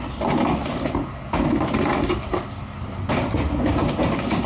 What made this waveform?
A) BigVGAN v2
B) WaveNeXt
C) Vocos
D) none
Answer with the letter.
D